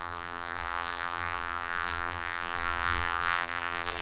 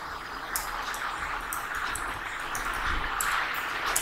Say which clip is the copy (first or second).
first